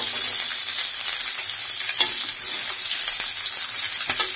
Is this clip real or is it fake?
real